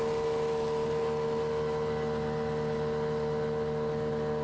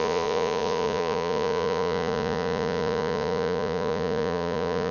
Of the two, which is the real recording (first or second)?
first